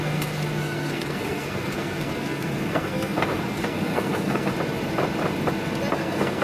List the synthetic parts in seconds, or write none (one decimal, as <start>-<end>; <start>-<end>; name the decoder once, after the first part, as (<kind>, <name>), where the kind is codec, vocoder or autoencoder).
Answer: 0.0-4.5 (codec, SNAC); 5.9-6.4